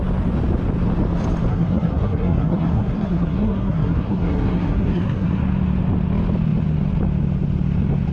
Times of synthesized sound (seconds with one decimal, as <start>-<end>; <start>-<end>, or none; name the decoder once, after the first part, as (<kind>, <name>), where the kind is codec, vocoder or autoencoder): 1.5-5.4 (codec, SNAC)